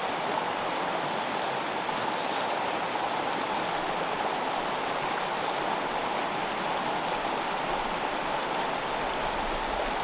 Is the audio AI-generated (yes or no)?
no